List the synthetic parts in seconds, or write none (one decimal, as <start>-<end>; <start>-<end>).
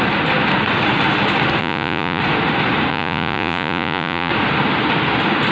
1.6-2.2; 2.9-4.3